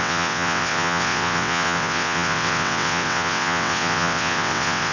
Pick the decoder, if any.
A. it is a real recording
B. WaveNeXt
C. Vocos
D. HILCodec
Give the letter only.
B